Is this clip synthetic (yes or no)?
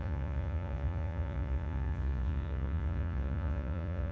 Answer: yes